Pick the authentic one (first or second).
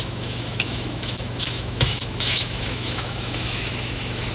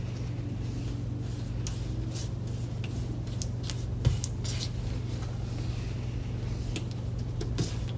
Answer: second